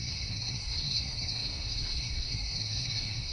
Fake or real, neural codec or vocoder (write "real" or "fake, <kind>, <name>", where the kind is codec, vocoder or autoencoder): fake, codec, SNAC